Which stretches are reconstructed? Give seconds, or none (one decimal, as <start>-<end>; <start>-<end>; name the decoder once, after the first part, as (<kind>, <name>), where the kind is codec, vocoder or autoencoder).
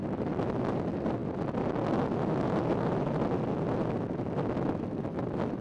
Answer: none